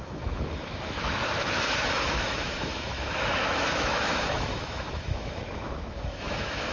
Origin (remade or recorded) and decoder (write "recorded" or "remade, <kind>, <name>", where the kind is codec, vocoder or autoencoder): remade, autoencoder, DAC-VAE